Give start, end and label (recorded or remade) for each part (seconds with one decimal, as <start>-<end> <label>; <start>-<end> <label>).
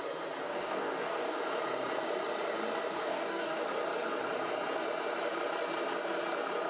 0.0-0.4 recorded; 0.4-1.4 remade; 1.4-3.0 recorded; 3.0-3.6 remade; 3.6-6.7 recorded